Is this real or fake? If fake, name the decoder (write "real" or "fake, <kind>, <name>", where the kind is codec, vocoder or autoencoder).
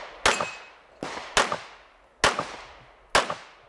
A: real